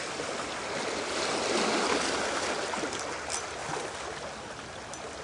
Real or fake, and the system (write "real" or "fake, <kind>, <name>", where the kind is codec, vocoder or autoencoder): real